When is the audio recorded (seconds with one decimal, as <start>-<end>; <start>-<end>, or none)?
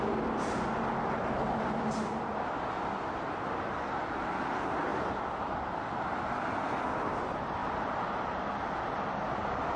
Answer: 0.0-9.8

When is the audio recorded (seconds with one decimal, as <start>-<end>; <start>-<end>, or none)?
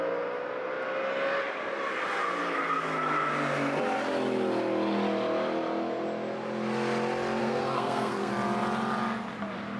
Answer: 0.0-7.4; 8.3-9.8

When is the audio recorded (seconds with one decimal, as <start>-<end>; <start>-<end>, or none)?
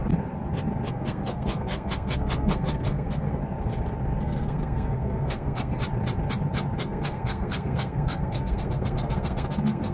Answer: 0.0-0.9; 3.4-4.2; 5.7-6.8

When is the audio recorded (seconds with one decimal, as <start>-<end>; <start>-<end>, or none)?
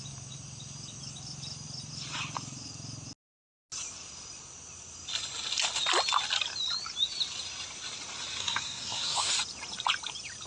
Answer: 0.0-8.4; 9.3-10.5